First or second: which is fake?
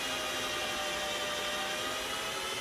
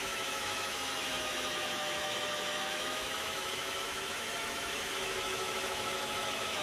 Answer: second